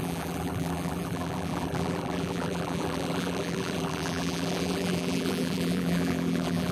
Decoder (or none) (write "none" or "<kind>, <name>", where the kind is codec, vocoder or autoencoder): vocoder, BigVGAN v2